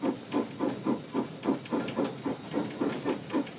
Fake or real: real